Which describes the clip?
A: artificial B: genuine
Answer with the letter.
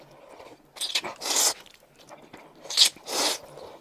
B